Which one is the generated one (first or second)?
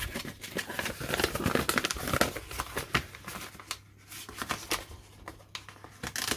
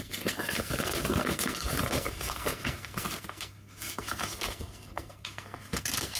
second